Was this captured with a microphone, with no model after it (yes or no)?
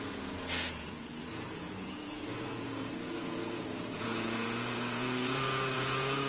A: no